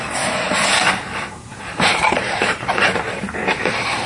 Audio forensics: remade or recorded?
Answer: remade